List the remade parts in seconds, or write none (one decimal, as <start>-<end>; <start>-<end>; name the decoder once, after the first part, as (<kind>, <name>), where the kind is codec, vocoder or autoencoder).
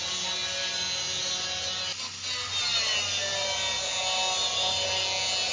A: none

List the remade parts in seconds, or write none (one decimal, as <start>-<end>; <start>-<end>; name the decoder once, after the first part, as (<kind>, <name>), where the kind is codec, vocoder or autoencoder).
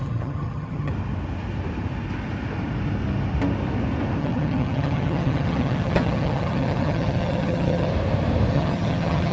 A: 0.0-0.9 (vocoder, HiFi-GAN); 4.2-7.9; 8.5-9.3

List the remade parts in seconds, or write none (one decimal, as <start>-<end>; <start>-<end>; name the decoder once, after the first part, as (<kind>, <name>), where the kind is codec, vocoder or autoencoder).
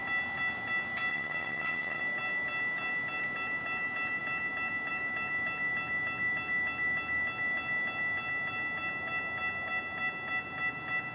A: 1.1-2.0 (vocoder, HiFi-GAN)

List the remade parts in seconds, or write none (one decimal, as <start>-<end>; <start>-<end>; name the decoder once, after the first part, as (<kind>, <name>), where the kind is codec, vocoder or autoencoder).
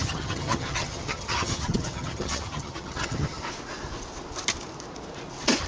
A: 0.0-3.4 (vocoder, HiFi-GAN)